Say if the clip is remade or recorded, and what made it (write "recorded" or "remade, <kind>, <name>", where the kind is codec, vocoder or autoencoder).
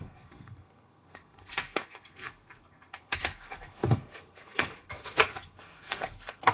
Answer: remade, codec, SNAC